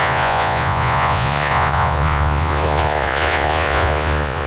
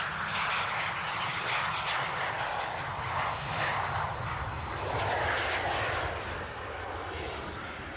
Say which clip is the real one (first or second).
second